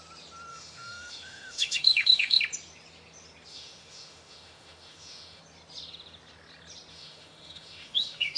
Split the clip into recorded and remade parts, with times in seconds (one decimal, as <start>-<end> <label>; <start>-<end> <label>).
0.0-0.5 recorded; 0.5-2.4 remade; 2.4-3.5 recorded; 3.5-5.4 remade; 5.4-6.9 recorded; 6.9-8.4 remade